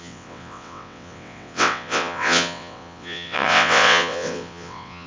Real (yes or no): no